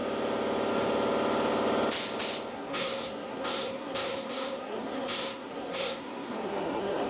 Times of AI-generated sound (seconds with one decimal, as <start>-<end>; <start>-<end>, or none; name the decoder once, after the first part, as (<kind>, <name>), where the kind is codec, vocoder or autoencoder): 2.5-7.1 (codec, SNAC)